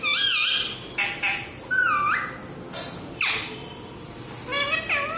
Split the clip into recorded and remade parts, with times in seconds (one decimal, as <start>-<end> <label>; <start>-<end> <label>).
0.0-5.2 recorded